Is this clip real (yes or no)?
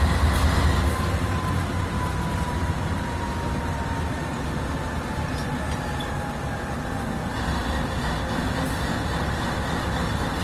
yes